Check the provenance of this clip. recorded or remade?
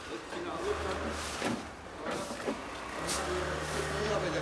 recorded